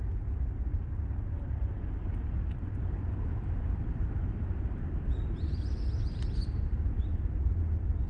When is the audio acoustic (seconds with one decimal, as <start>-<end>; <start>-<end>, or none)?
0.0-3.3; 4.1-8.1

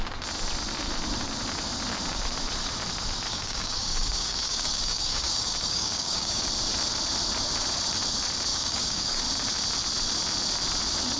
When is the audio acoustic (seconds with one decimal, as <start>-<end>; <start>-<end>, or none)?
0.0-3.3; 6.4-8.5; 9.2-11.2